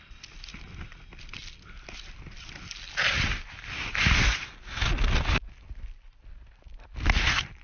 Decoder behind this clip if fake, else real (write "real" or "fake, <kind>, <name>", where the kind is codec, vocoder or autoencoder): real